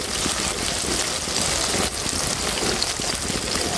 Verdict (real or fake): real